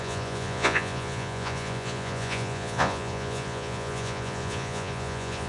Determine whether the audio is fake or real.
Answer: fake